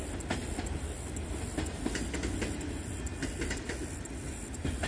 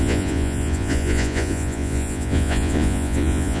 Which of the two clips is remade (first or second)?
second